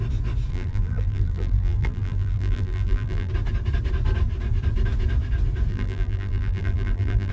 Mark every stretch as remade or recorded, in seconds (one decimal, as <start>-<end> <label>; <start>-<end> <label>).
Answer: 0.0-0.5 recorded; 0.5-3.3 remade; 3.3-5.7 recorded; 5.7-7.3 remade

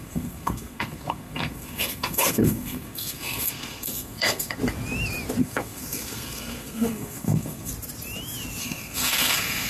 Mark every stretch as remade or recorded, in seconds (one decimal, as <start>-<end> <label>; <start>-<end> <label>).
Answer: 0.0-4.6 remade; 4.6-5.4 recorded; 5.4-7.7 remade; 7.7-8.6 recorded; 8.6-9.7 remade

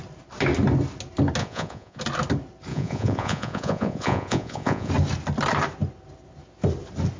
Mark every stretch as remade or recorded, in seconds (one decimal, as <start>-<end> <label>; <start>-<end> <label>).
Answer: 0.0-1.4 recorded; 1.4-2.0 remade; 2.0-2.7 recorded; 2.7-4.9 remade; 4.9-7.2 recorded

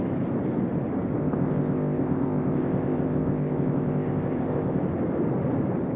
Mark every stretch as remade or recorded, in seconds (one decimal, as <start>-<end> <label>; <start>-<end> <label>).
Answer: 0.0-1.2 recorded; 1.2-4.8 remade; 4.8-6.0 recorded

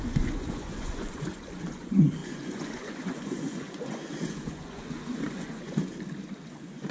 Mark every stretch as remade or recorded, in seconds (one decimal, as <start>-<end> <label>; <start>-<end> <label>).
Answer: 0.0-5.9 remade; 5.9-6.5 recorded; 6.5-6.9 remade

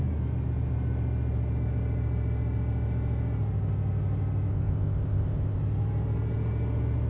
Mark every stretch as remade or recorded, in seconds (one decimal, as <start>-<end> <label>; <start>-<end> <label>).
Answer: 0.0-4.5 recorded; 4.5-5.6 remade; 5.6-7.1 recorded

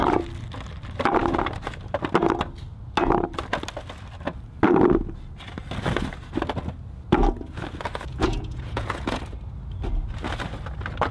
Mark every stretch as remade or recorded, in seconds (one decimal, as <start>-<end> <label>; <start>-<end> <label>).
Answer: 0.0-8.1 recorded; 8.1-9.2 remade; 9.2-11.1 recorded